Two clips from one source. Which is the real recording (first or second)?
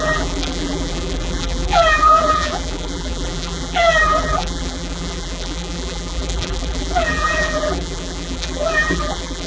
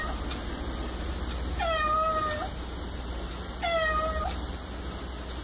second